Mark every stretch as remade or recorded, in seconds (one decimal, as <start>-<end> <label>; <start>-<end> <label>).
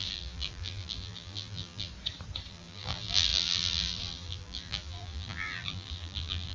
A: 0.0-1.9 remade; 1.9-2.5 recorded; 2.5-6.5 remade